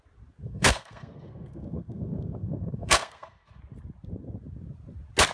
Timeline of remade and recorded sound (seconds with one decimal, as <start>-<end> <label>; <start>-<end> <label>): 0.0-0.4 recorded; 0.4-3.6 remade; 3.6-5.3 recorded

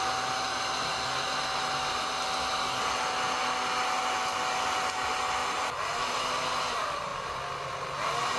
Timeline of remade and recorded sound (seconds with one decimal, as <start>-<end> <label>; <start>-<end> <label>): 0.0-8.4 recorded

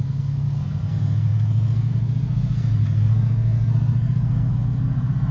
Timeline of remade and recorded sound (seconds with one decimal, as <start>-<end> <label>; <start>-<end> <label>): 0.0-5.3 remade

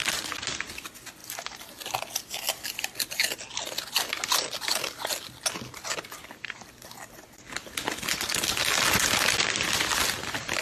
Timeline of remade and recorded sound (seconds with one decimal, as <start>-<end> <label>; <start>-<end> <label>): 0.0-10.6 recorded